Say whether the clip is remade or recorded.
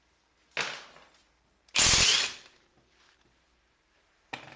recorded